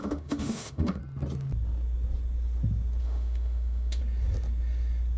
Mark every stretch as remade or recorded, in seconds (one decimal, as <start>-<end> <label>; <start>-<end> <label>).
0.0-1.0 remade; 1.0-3.0 recorded; 3.0-4.0 remade; 4.0-5.2 recorded